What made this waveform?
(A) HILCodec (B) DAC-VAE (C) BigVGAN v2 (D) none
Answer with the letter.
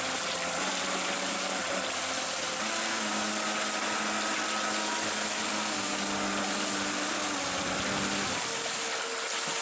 D